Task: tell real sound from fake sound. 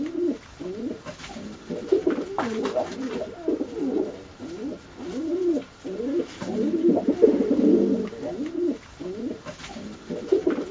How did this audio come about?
real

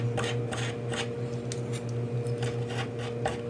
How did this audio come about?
real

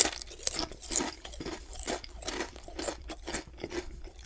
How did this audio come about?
fake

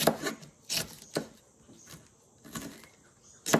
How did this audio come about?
real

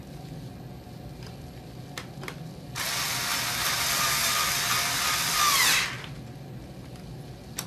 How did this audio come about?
real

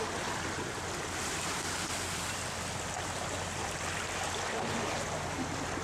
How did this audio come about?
real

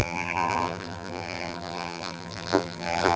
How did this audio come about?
fake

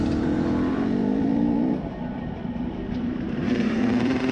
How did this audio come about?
fake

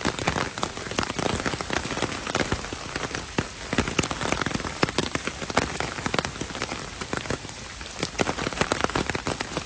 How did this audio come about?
fake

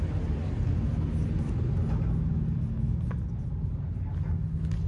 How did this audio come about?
real